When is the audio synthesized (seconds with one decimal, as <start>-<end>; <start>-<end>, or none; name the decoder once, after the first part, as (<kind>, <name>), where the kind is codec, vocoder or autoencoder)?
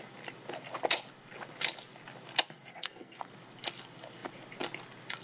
2.7-3.3 (codec, SNAC)